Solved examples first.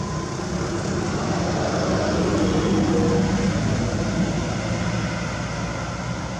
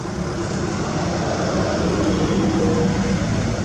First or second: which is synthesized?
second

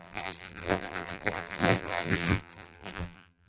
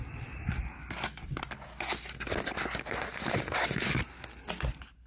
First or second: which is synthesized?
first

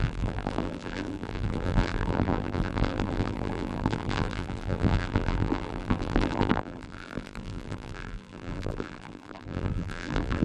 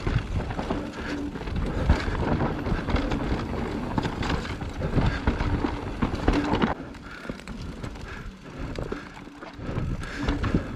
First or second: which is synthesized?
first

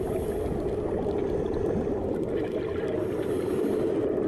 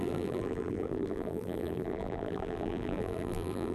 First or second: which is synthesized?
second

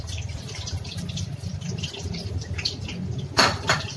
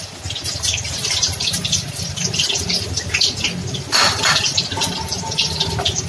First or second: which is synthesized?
first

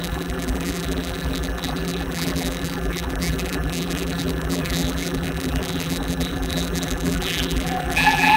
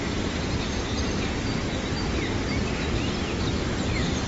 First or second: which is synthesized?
first